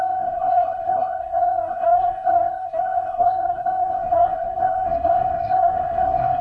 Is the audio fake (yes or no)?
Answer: yes